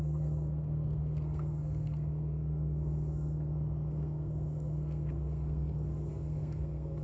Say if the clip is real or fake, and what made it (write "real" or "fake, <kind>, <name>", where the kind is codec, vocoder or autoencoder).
fake, codec, SNAC